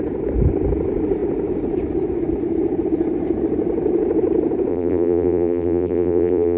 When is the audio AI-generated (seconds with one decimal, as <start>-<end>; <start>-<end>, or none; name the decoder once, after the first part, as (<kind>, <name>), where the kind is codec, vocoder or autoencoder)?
4.7-6.6 (vocoder, BigVGAN v2)